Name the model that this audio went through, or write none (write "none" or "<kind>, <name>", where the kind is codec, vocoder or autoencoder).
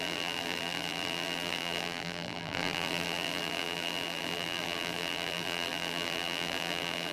vocoder, BigVGAN v2